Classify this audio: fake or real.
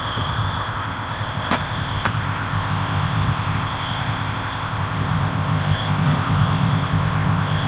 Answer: fake